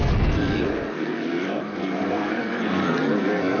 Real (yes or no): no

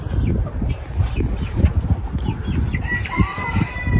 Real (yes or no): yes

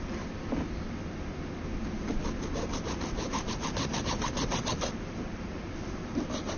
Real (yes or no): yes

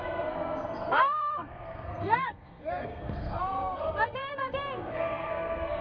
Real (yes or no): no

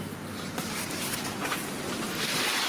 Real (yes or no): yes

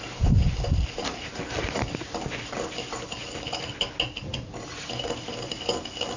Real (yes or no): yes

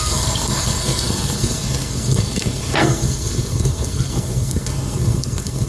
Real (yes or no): no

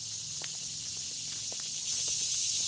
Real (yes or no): yes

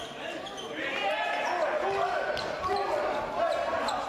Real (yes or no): yes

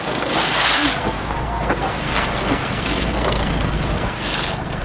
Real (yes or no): no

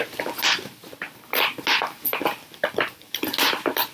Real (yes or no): yes